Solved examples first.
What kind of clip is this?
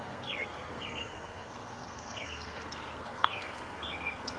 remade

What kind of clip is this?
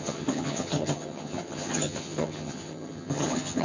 remade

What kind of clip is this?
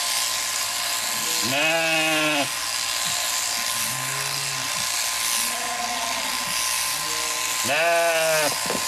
recorded